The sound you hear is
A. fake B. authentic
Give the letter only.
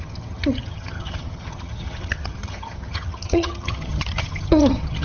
A